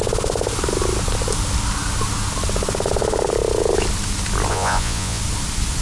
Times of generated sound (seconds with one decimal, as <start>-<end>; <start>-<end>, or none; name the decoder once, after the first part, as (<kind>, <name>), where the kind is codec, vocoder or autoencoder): 4.5-5.2 (vocoder, Vocos)